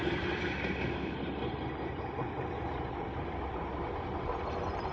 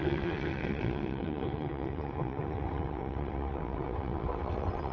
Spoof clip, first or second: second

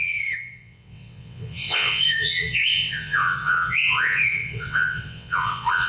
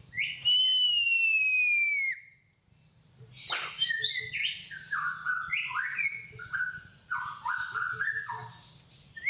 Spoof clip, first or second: first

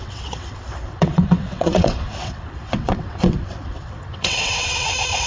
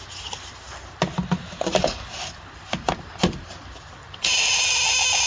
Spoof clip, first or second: first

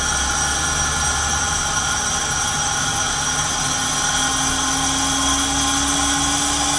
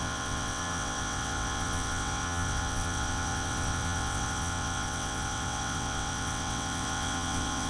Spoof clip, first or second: second